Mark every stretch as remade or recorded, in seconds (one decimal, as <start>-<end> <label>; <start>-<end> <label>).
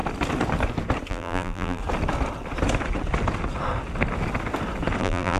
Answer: 0.0-1.1 recorded; 1.1-1.8 remade; 1.8-5.0 recorded; 5.0-5.4 remade